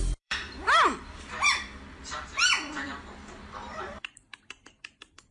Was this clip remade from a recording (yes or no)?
yes